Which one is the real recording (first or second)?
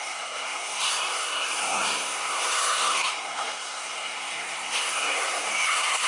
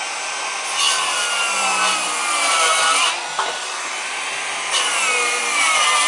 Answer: second